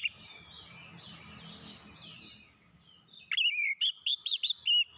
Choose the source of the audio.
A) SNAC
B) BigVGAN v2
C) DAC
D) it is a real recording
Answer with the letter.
D